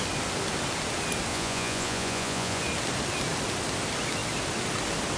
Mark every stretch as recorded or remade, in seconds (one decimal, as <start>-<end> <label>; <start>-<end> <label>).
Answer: 0.0-1.3 recorded; 1.3-2.6 remade; 2.6-5.2 recorded